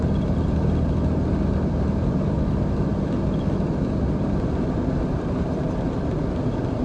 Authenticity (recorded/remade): recorded